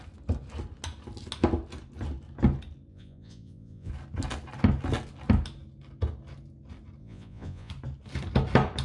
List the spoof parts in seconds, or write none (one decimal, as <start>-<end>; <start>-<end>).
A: 2.9-3.9; 7.0-7.7